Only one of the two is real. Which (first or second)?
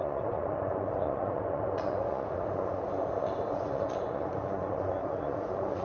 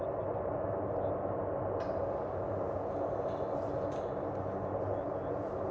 second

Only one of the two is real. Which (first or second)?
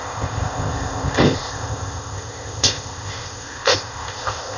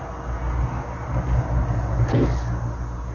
second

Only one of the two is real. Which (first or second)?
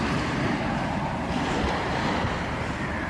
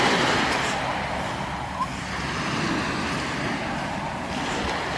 second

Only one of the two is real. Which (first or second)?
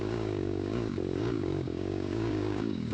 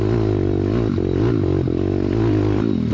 second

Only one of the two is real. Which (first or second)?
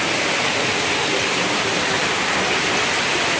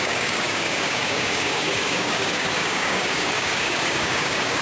first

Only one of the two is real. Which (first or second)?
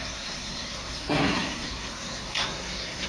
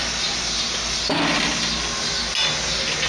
second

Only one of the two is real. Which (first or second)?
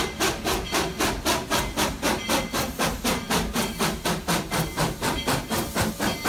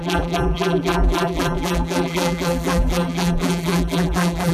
first